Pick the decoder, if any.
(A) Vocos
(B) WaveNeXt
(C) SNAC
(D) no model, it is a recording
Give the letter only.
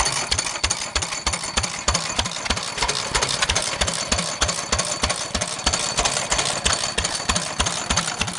D